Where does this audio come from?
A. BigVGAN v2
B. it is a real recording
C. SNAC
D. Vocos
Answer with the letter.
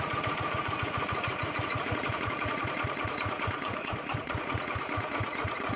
D